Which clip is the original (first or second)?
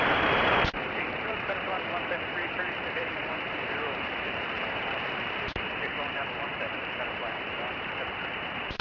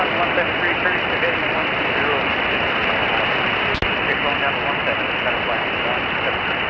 second